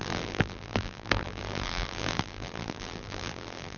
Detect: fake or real fake